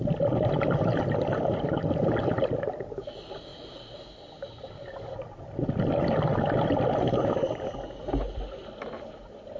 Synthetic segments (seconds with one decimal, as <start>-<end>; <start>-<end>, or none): none